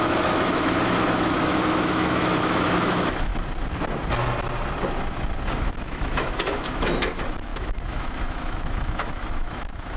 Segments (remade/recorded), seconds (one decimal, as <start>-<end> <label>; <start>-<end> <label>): 0.0-3.3 remade; 3.3-5.7 recorded; 5.7-10.0 remade